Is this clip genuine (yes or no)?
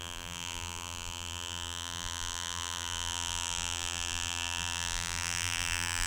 no